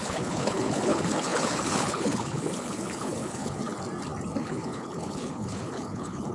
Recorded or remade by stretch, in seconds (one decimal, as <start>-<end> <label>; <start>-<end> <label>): 0.0-3.6 remade; 3.6-4.3 recorded; 4.3-6.3 remade